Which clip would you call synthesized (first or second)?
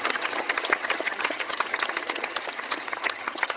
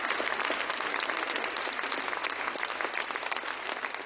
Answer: first